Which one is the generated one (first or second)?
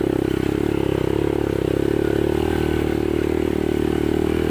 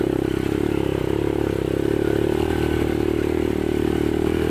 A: second